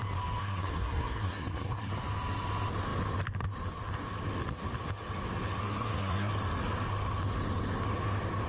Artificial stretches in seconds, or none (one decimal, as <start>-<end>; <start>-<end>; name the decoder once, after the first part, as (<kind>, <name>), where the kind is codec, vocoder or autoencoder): 0.4-1.9 (codec, SNAC); 5.6-6.3